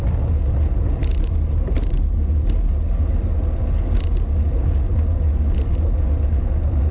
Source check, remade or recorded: recorded